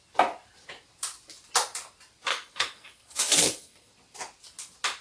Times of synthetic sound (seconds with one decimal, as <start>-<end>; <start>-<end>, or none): 2.3-3.9